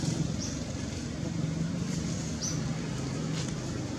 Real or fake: real